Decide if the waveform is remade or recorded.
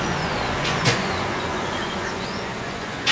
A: remade